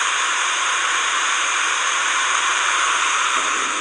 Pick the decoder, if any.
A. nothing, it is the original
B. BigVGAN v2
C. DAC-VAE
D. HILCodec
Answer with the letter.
B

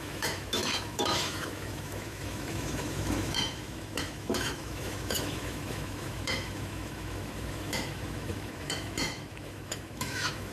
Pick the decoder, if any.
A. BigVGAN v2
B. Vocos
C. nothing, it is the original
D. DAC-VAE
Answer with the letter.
D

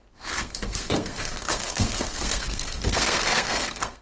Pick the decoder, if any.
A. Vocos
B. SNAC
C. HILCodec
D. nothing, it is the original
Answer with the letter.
B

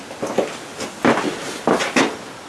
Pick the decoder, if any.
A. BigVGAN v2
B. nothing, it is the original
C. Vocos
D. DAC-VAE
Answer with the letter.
B